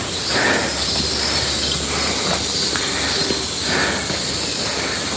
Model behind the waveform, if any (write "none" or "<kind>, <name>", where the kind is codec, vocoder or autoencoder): none